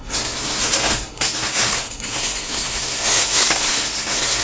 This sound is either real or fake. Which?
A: fake